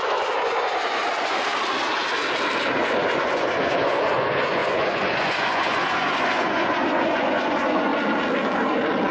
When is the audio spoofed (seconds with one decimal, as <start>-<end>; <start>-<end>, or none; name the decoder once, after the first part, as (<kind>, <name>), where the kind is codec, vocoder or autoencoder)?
0.0-1.0 (vocoder, Vocos); 2.7-7.9